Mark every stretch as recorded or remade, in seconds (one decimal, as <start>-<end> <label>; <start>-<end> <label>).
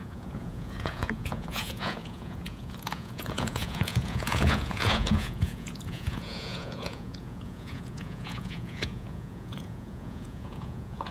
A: 0.0-11.1 remade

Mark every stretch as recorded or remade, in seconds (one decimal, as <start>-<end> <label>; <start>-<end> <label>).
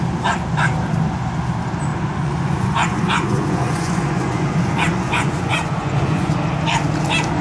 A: 0.0-1.9 recorded; 1.9-6.3 remade; 6.3-7.4 recorded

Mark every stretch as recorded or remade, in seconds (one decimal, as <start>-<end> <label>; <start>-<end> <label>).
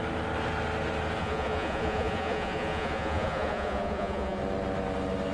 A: 0.0-1.2 recorded; 1.2-4.4 remade; 4.4-5.3 recorded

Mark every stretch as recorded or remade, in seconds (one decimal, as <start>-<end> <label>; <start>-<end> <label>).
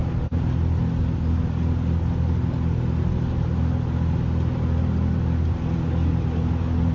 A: 0.0-6.9 recorded